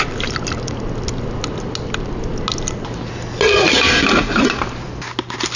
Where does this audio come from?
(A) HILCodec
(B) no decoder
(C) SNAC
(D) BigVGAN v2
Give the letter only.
B